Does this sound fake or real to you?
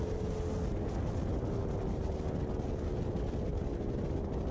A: real